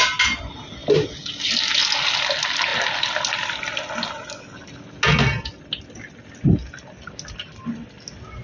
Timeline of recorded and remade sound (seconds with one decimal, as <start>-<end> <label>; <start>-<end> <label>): 0.0-8.4 recorded